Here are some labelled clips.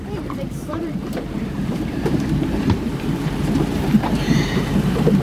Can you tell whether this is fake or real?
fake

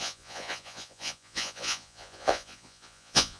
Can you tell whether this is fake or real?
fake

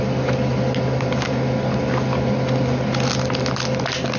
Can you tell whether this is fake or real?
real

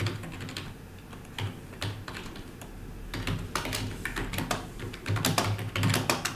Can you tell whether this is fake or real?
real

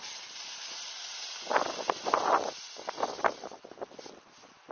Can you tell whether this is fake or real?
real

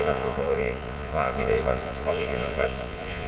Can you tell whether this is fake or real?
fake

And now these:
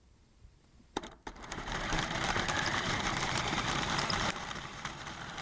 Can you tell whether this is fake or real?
fake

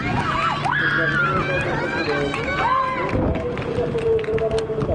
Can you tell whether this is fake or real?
real